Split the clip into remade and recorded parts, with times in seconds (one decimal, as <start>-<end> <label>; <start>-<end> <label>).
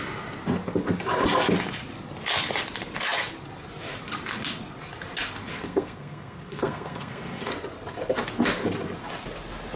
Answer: 0.0-5.5 recorded; 5.5-7.5 remade; 7.5-9.8 recorded